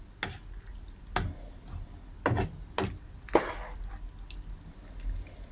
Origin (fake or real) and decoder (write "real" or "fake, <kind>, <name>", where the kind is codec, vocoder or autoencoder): real